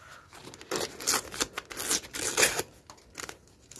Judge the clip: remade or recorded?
recorded